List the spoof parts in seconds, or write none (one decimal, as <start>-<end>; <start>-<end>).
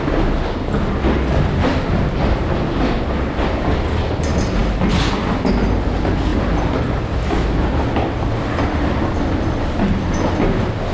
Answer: none